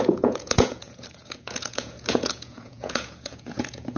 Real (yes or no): no